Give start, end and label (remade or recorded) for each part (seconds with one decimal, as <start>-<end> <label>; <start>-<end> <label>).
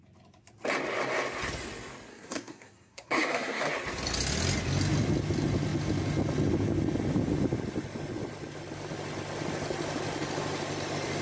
0.0-2.1 recorded; 2.1-3.7 remade; 3.7-11.2 recorded